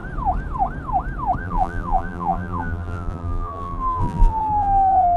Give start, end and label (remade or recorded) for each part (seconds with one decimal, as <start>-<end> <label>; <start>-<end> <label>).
0.0-1.4 recorded; 1.4-5.2 remade